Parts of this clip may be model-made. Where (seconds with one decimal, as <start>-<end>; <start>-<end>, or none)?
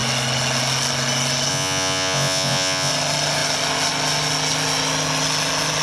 1.5-2.9